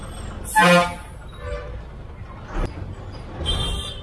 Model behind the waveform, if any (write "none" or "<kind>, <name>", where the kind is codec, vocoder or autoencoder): none